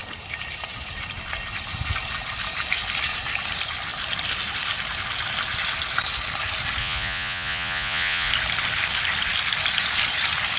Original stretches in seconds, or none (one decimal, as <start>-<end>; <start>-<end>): 0.0-6.8; 8.3-10.6